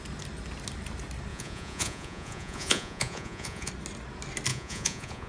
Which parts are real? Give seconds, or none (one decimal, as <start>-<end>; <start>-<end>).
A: 0.0-1.3; 3.7-4.5